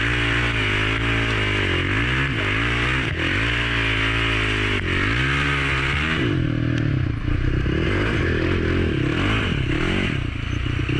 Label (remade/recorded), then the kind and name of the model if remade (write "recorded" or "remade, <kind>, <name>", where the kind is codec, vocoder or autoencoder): recorded